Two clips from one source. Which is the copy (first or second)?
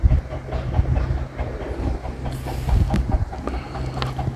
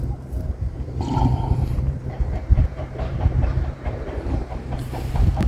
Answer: second